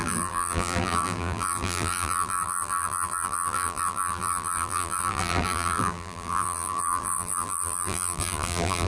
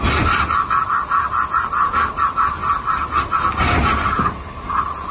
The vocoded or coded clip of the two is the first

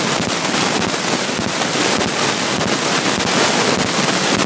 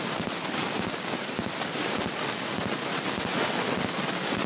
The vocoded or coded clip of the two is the second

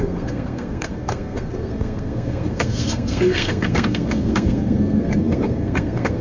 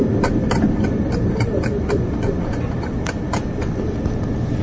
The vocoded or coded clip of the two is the first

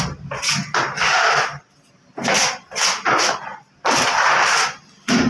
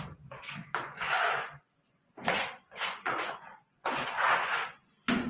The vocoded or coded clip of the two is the second